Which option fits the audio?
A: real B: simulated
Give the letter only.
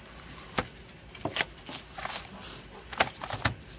A